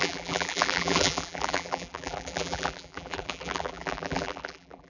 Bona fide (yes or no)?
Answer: no